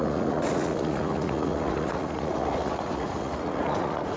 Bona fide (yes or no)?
no